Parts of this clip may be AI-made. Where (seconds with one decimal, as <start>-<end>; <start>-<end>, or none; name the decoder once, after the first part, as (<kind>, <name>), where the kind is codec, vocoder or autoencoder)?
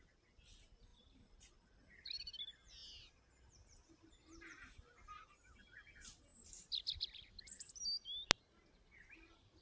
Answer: 0.9-2.4 (vocoder, BigVGAN v2); 6.3-7.7